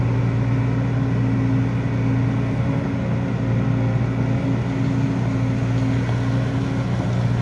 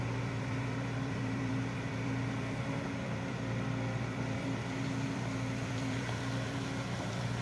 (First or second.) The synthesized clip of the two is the second